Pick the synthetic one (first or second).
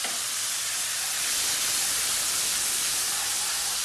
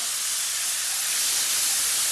first